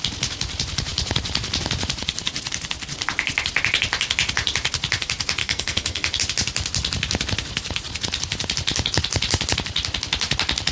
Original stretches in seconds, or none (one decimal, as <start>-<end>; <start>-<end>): 0.0-5.4; 6.2-10.7